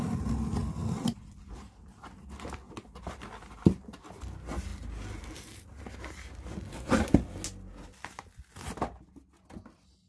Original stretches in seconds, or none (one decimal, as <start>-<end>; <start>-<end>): 0.0-10.1